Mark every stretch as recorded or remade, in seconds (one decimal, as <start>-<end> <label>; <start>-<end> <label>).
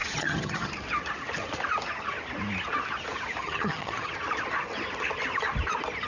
0.0-0.7 remade; 0.7-3.4 recorded; 3.4-4.1 remade; 4.1-6.1 recorded